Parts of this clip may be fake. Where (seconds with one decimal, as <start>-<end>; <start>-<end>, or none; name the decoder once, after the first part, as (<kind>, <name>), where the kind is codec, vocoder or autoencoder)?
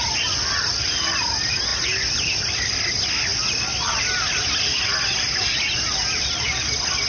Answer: none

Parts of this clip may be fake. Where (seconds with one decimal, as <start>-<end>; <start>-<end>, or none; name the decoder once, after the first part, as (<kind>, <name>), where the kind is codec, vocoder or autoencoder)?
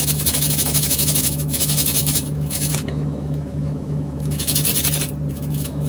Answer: 0.0-4.7 (autoencoder, DAC-VAE); 5.3-5.9